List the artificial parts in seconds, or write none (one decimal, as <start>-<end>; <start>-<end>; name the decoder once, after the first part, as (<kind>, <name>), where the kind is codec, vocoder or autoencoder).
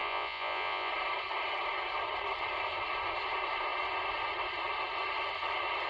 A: 0.0-0.9 (vocoder, Vocos)